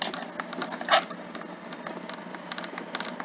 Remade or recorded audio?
recorded